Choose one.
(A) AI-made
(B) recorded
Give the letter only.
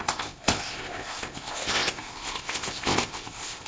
A